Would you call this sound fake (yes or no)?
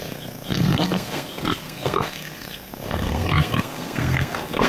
yes